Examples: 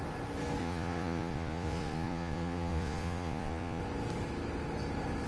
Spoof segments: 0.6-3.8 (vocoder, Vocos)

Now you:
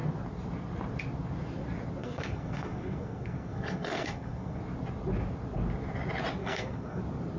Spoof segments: 2.0-4.6 (codec, SNAC); 6.4-7.0

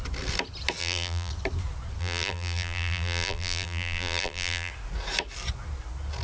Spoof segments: 0.8-1.3 (vocoder, BigVGAN v2); 2.0-4.7

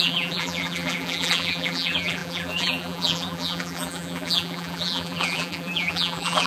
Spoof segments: 0.0-6.5 (vocoder, BigVGAN v2)